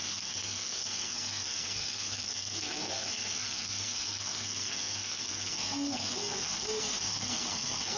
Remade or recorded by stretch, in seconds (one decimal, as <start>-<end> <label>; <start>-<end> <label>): 0.0-8.0 remade